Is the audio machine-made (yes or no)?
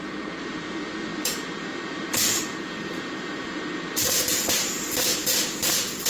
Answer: yes